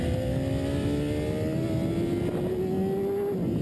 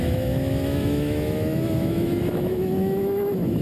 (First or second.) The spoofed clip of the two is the second